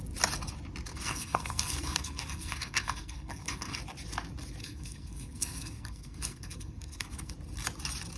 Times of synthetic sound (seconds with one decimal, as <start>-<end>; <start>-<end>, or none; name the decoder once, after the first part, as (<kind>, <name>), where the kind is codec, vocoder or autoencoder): 0.9-3.8 (codec, SNAC); 4.6-7.3